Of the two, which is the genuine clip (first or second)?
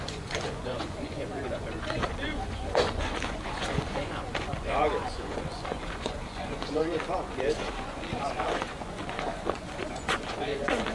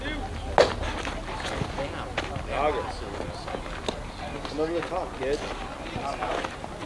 second